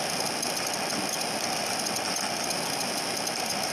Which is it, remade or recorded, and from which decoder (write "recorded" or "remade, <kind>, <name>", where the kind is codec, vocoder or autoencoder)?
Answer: remade, vocoder, BigVGAN v2